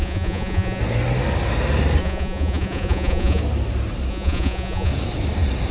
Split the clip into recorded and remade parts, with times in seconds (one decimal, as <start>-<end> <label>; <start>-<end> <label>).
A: 0.0-0.8 remade; 0.8-2.0 recorded; 2.0-3.4 remade; 3.4-4.1 recorded; 4.1-4.9 remade; 4.9-5.7 recorded